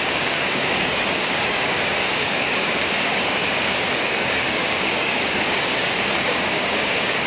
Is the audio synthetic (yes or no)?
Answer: yes